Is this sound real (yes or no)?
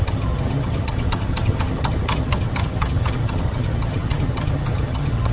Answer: no